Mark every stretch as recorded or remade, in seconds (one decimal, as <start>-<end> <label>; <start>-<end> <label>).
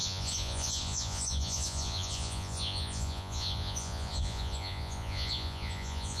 0.0-6.2 remade